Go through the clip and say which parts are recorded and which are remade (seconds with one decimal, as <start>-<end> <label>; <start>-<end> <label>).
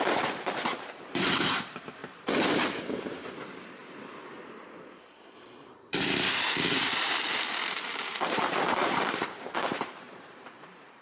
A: 0.0-3.8 remade; 3.8-5.1 recorded; 5.1-11.0 remade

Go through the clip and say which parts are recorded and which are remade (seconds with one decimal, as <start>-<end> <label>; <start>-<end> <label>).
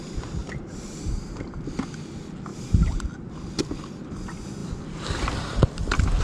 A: 0.0-0.4 recorded; 0.4-1.6 remade; 1.6-2.5 recorded; 2.5-3.0 remade; 3.0-6.2 recorded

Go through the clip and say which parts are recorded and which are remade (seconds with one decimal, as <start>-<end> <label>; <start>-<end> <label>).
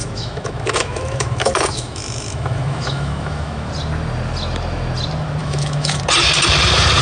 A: 0.0-3.7 remade; 3.7-5.4 recorded; 5.4-6.0 remade; 6.0-7.0 recorded